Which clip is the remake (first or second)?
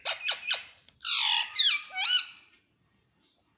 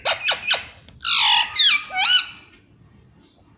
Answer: first